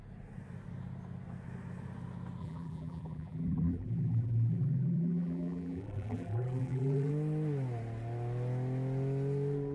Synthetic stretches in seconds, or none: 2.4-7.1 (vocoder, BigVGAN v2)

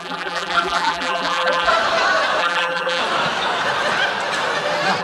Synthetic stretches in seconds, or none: 0.0-1.7 (vocoder, BigVGAN v2); 2.4-3.0

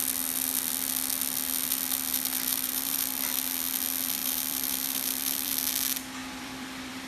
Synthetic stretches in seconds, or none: 2.5-3.1 (vocoder, BigVGAN v2); 4.2-5.5; 6.2-7.1

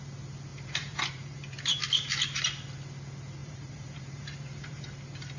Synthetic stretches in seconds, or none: 0.5-1.8 (vocoder, BigVGAN v2); 3.4-4.8

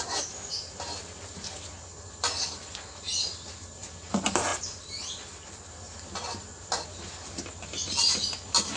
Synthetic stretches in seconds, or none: none

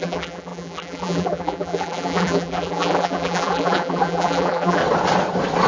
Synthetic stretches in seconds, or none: 0.0-4.8 (vocoder, BigVGAN v2)

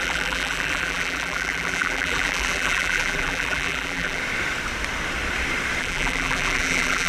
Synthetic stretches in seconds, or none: 0.0-4.2 (vocoder, BigVGAN v2); 5.8-7.1